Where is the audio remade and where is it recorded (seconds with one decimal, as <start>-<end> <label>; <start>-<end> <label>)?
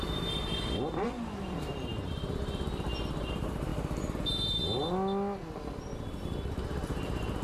0.0-1.9 remade; 1.9-3.1 recorded; 3.1-3.7 remade; 3.7-6.2 recorded; 6.2-7.4 remade